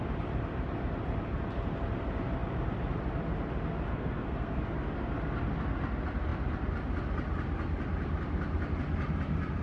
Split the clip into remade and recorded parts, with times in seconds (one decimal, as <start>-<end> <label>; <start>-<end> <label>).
0.0-3.9 recorded; 3.9-4.6 remade; 4.6-9.6 recorded